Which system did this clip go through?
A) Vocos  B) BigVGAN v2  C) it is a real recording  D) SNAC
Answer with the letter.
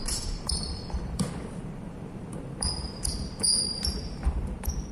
B